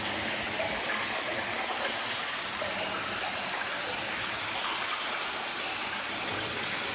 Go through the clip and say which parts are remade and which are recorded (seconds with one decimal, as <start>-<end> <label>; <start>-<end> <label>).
0.0-6.9 recorded